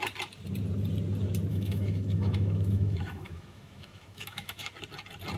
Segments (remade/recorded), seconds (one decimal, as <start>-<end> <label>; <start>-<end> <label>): 0.0-1.5 recorded; 1.5-4.7 remade; 4.7-5.4 recorded